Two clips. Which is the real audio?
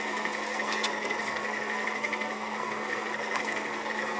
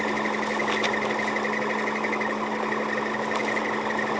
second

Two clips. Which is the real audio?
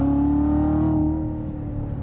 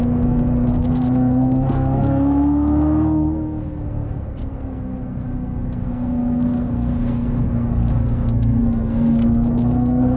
first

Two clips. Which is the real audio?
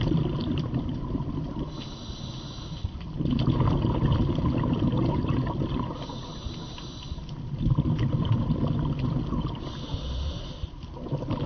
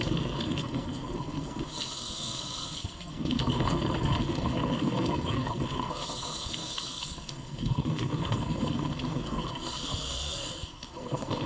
first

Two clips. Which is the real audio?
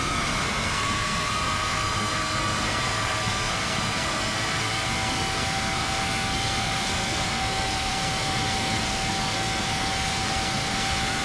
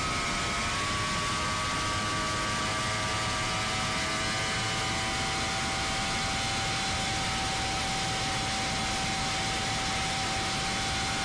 second